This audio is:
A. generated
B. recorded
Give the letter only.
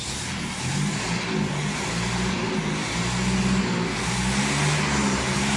B